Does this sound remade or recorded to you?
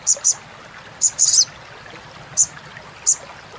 recorded